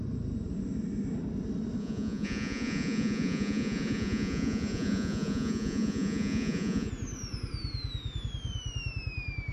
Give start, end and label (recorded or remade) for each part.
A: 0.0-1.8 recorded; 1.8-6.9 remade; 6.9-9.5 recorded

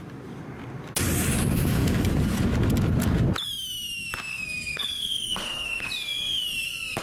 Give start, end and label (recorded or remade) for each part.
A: 0.0-4.3 recorded; 4.3-5.9 remade; 5.9-7.0 recorded

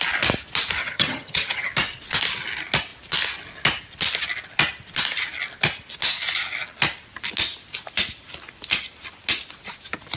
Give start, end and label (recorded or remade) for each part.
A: 0.0-0.8 recorded; 0.8-1.7 remade; 1.7-10.2 recorded